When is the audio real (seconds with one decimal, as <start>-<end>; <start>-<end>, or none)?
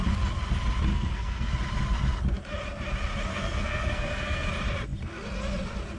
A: 0.0-0.9; 1.5-3.3; 4.5-6.0